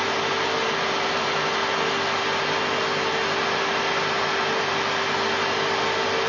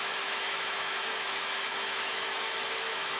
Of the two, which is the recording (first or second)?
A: first